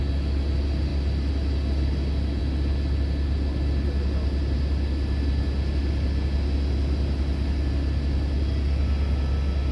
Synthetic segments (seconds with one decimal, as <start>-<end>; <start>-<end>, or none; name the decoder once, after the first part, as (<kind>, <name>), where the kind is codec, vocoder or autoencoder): none